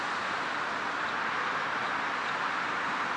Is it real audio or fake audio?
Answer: real